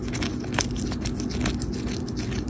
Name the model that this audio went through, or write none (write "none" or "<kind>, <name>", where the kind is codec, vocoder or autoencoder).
none